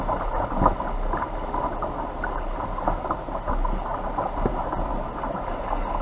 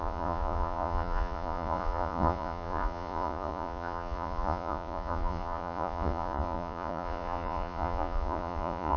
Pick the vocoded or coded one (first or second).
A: second